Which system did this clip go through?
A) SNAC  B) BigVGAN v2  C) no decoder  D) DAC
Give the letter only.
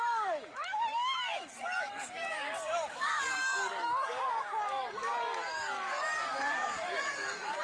D